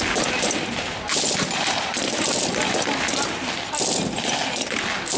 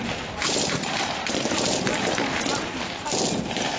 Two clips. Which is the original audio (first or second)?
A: first